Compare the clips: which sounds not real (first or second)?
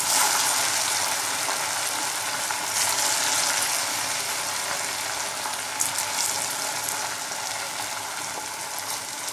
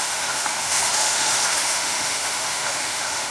second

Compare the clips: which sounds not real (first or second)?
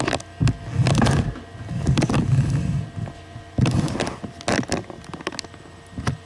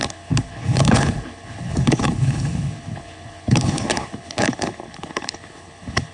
second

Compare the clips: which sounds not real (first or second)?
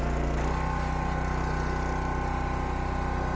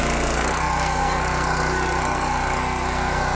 second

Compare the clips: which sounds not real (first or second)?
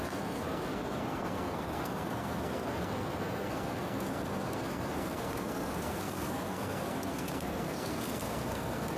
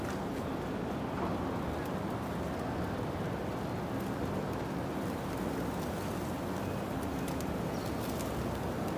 first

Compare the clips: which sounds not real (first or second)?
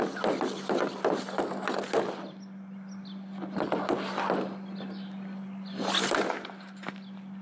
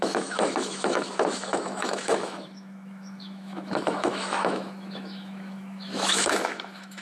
second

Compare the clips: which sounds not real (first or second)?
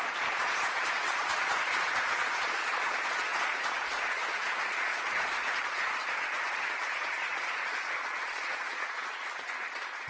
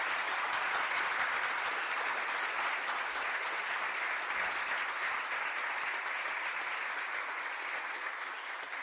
first